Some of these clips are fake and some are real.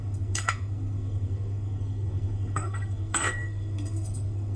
fake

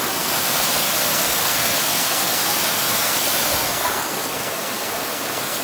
fake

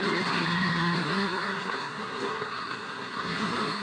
fake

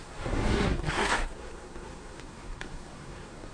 fake